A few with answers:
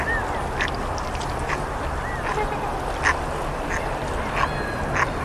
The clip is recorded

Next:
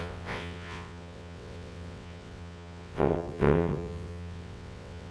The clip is remade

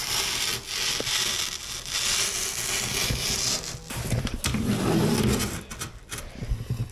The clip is recorded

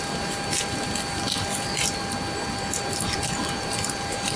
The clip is remade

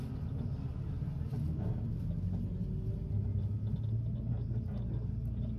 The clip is recorded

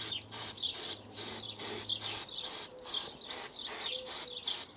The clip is recorded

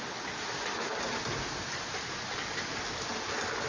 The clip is recorded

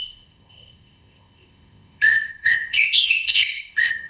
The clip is remade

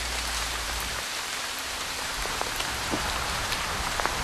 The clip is remade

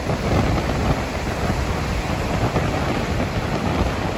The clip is recorded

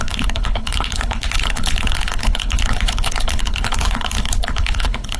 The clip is remade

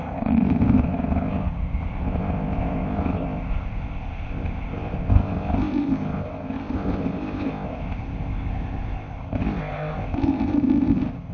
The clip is remade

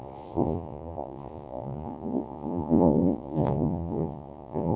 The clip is remade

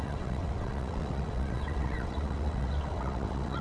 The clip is remade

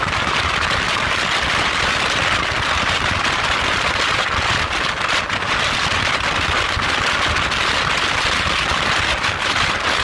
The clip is recorded